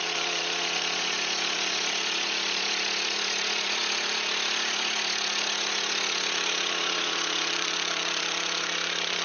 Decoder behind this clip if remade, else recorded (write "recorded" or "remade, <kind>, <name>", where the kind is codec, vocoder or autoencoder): remade, vocoder, Vocos